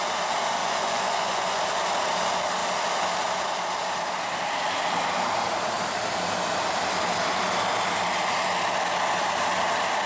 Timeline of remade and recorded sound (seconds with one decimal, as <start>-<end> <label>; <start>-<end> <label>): 0.0-0.6 recorded; 0.6-1.6 remade; 1.6-10.1 recorded